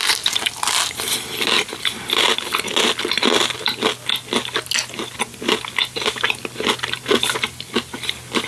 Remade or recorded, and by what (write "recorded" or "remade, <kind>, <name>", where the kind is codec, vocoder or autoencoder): recorded